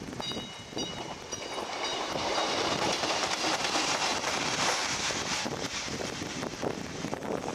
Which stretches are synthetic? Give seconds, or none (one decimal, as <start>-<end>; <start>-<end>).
0.8-1.4; 1.9-3.3; 4.1-7.5